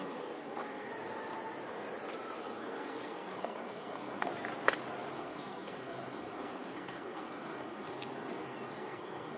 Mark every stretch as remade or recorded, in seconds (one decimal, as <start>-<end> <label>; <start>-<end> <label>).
0.0-0.9 remade; 0.9-2.4 recorded; 2.4-4.3 remade; 4.3-5.1 recorded; 5.1-9.4 remade